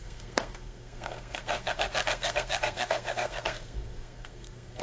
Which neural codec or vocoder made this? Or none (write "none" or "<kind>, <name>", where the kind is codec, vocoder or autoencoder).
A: codec, SNAC